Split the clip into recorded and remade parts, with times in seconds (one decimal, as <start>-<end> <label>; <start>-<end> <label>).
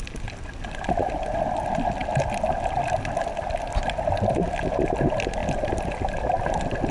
0.0-5.4 recorded; 5.4-6.9 remade